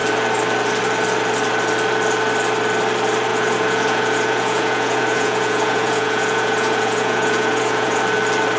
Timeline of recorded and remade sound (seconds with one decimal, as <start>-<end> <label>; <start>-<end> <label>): 0.0-3.3 recorded; 3.3-8.0 remade; 8.0-8.6 recorded